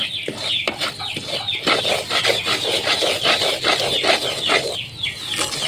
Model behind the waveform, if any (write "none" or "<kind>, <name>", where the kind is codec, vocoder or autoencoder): none